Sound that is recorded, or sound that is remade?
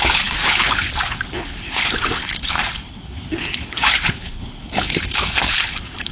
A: remade